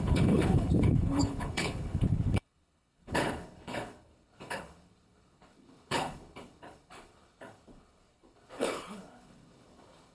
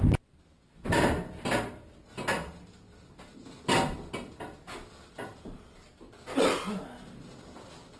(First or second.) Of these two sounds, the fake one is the first